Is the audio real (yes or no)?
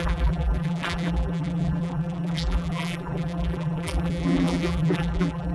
no